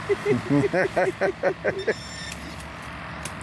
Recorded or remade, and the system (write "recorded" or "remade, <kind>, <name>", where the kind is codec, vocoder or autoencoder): recorded